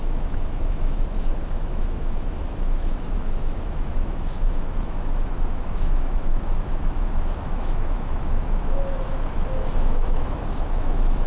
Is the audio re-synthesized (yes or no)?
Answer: yes